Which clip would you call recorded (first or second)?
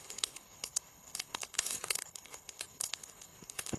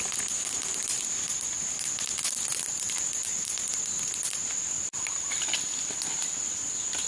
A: second